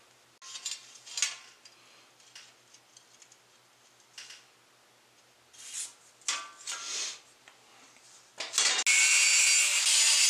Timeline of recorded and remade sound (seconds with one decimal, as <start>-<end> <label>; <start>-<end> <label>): 0.0-10.3 recorded